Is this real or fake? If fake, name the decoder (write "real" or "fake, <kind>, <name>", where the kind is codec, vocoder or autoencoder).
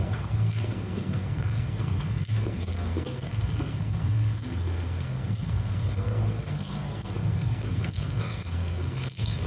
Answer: fake, codec, SNAC